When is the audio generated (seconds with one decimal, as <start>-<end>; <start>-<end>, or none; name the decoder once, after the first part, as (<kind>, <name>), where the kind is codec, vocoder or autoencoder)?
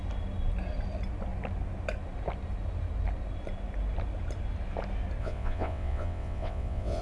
5.2-7.0 (vocoder, WaveNeXt)